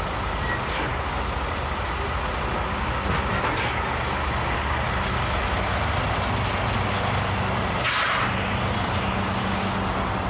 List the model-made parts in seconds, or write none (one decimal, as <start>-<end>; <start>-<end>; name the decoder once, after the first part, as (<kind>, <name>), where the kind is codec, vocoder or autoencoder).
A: none